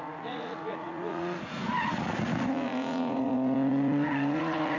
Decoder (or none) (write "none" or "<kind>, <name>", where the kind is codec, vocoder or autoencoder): vocoder, Vocos